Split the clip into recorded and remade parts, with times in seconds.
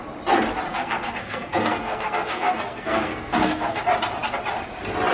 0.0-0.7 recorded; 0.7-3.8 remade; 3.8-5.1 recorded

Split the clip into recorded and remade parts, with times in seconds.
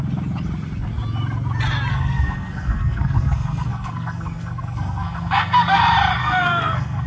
0.0-1.9 recorded; 1.9-5.8 remade; 5.8-6.2 recorded; 6.2-7.1 remade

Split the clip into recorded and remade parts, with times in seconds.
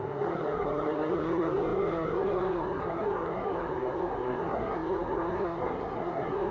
0.0-6.5 remade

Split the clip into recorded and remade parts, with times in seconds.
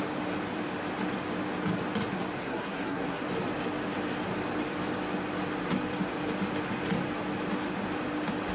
0.0-2.4 recorded; 2.4-3.2 remade; 3.2-8.5 recorded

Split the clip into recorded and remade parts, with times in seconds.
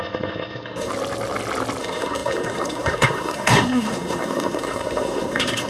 0.0-0.9 remade; 0.9-1.8 recorded; 1.8-5.7 remade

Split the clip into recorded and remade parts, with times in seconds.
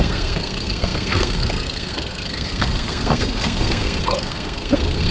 0.0-5.1 remade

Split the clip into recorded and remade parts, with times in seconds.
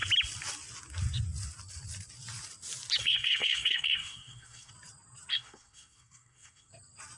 0.0-3.0 recorded; 3.0-4.7 remade; 4.7-5.3 recorded; 5.3-6.7 remade; 6.7-7.2 recorded